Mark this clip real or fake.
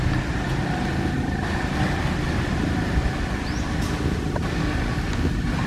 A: real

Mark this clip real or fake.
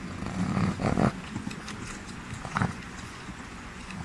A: fake